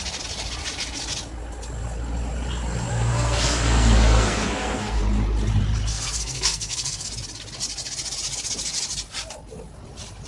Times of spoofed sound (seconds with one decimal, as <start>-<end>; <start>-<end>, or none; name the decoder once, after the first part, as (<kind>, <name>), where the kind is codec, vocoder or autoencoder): 2.9-5.0 (codec, SNAC); 5.9-7.1